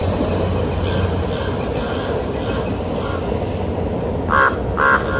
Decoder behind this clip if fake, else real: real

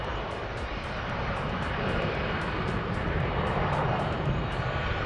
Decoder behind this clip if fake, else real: fake, vocoder, BigVGAN v2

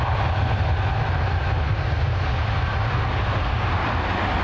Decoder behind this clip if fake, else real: real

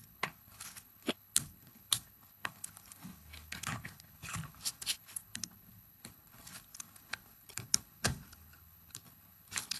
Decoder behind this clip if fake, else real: fake, codec, HILCodec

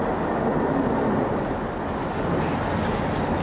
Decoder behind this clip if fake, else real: real